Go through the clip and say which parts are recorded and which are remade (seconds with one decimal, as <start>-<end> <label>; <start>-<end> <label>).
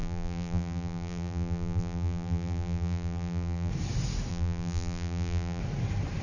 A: 0.0-3.7 remade; 3.7-4.3 recorded; 4.3-5.6 remade; 5.6-6.2 recorded